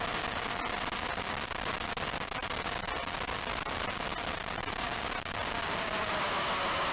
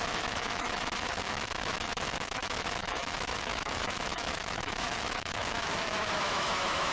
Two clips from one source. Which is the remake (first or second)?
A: second